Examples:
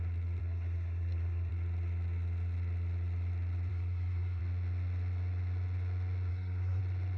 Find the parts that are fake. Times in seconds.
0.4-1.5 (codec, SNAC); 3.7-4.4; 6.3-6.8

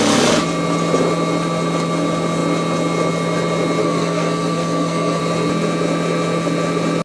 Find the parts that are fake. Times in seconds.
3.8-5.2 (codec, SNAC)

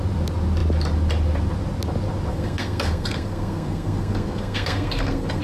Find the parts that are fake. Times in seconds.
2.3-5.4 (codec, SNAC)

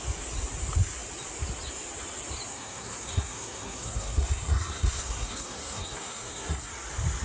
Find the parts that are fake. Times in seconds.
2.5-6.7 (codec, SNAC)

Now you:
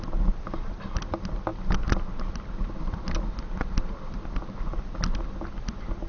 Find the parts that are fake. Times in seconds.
none

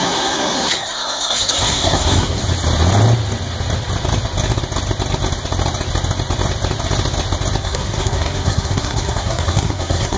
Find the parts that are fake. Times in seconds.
0.0-2.4 (codec, SNAC); 7.6-10.2

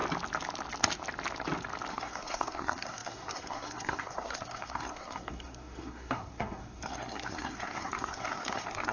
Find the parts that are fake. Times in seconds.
1.9-8.9 (codec, SNAC)